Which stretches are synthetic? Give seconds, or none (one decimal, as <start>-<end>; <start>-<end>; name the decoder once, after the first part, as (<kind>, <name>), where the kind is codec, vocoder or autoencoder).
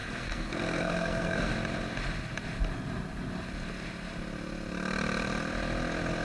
0.0-1.5 (codec, SNAC)